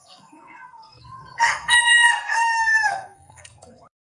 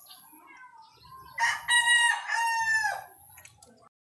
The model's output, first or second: first